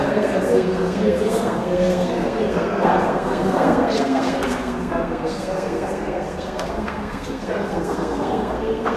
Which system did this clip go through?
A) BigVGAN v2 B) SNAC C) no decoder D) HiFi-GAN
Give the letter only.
B